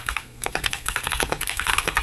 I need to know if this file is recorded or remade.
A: remade